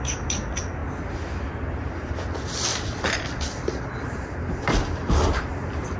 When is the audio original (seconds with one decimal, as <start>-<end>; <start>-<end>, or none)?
0.0-2.7; 3.5-6.0